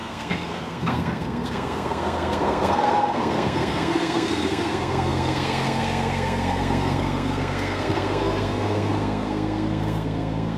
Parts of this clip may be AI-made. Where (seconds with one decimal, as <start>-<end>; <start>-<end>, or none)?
0.0-10.6